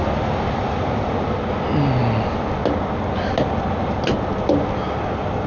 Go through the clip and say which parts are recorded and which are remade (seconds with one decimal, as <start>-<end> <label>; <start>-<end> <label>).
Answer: 0.0-5.5 recorded